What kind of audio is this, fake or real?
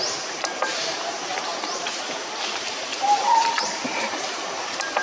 fake